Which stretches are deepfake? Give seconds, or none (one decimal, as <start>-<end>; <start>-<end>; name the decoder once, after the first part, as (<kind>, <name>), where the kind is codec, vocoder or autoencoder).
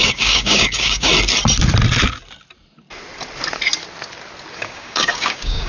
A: 0.0-1.1 (codec, DAC); 4.5-5.7